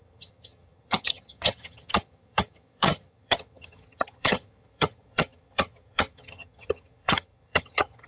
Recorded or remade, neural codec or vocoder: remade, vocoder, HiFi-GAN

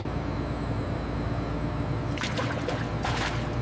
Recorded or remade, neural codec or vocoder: recorded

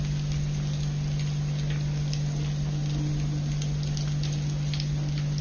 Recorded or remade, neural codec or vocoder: recorded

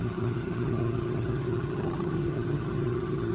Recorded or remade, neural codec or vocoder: remade, vocoder, HiFi-GAN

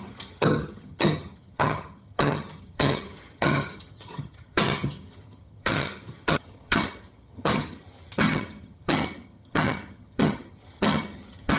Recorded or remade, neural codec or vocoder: remade, vocoder, HiFi-GAN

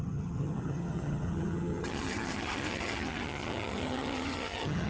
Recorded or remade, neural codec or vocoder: remade, vocoder, HiFi-GAN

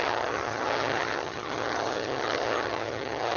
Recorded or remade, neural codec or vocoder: remade, vocoder, HiFi-GAN